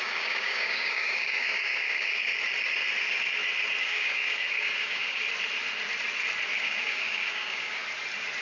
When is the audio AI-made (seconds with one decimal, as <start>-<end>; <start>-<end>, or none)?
0.0-2.3; 3.8-5.2; 6.6-7.8